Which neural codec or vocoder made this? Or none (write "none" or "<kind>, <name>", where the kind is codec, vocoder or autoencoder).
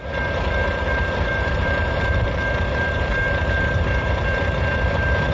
vocoder, BigVGAN v2